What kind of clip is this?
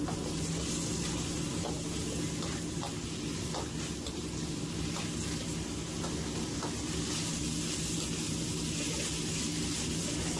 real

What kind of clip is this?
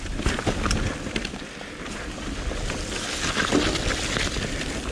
real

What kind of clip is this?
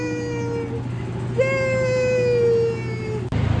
real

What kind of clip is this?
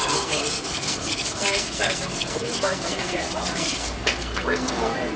fake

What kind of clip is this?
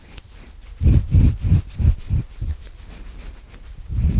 fake